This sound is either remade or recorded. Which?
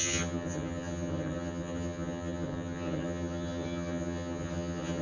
remade